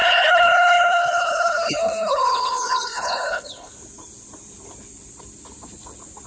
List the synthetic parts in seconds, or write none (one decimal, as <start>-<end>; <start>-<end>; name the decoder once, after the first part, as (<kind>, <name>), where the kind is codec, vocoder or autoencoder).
0.0-3.7 (codec, HILCodec)